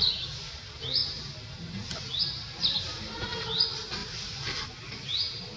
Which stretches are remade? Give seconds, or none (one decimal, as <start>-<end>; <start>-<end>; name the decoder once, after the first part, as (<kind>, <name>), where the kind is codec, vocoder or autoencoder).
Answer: none